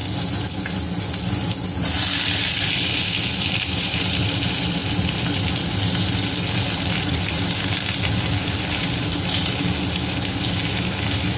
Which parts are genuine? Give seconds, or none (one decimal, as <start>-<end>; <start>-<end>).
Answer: 0.0-11.4